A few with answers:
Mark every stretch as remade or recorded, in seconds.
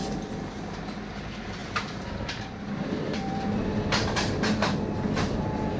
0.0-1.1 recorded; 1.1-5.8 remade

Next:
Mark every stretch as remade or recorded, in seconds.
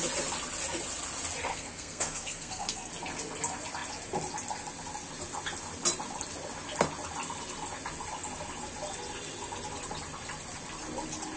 0.0-1.5 recorded; 1.5-2.9 remade; 2.9-11.4 recorded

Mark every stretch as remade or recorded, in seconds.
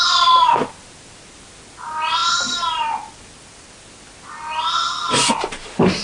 0.0-6.0 recorded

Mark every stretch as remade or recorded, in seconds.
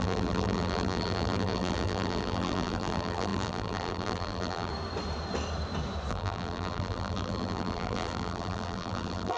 0.0-4.7 remade; 4.7-6.1 recorded; 6.1-9.4 remade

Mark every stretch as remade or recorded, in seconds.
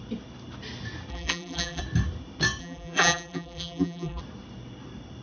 0.0-1.1 recorded; 1.1-1.8 remade; 1.8-2.6 recorded; 2.6-4.2 remade; 4.2-5.2 recorded